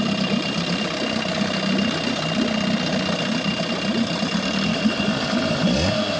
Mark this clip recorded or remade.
recorded